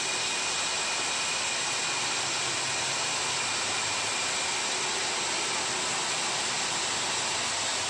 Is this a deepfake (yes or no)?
no